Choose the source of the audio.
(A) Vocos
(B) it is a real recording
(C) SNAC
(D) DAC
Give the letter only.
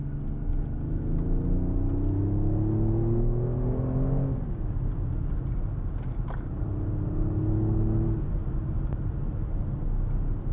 B